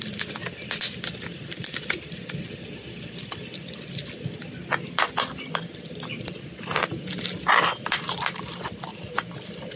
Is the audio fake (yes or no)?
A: no